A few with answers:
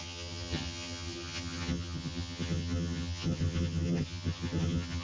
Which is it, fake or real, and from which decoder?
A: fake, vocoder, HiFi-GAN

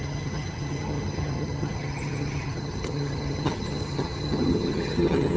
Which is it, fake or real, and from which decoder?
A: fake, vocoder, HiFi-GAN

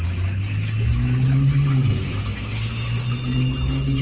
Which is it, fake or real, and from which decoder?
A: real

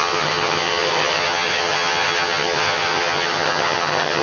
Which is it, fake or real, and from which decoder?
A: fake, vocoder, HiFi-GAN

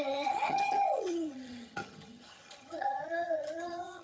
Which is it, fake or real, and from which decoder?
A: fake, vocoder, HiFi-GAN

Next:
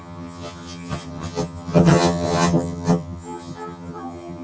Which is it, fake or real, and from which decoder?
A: fake, vocoder, HiFi-GAN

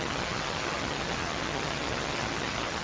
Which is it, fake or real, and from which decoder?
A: fake, vocoder, HiFi-GAN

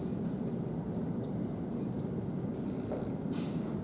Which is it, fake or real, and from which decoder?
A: real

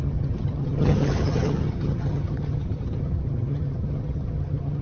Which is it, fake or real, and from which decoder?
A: fake, vocoder, HiFi-GAN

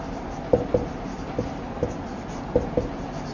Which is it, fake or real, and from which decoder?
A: real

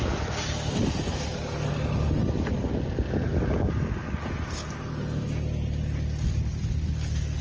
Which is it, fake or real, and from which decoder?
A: real